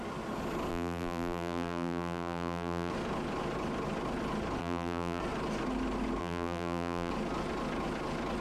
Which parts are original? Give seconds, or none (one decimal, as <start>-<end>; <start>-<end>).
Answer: 0.0-0.7; 2.9-4.6; 5.2-6.2; 7.1-8.4